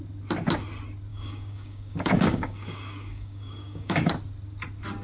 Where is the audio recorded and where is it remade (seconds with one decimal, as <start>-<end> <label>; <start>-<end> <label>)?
0.0-1.1 recorded; 1.1-4.1 remade; 4.1-5.0 recorded